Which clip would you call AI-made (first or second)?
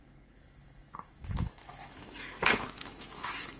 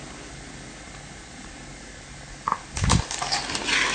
first